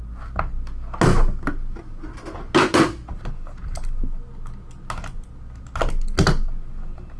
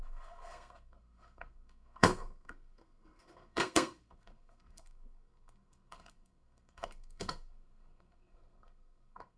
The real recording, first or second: first